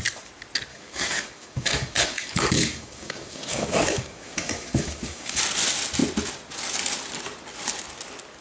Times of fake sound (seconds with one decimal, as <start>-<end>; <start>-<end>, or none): 0.7-5.4